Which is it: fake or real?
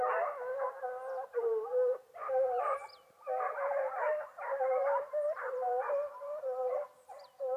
real